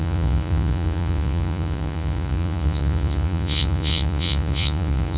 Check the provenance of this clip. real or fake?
fake